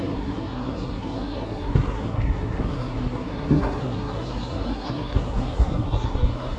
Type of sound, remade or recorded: remade